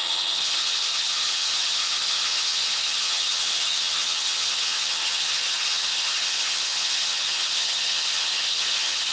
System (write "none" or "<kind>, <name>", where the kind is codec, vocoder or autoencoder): vocoder, HiFi-GAN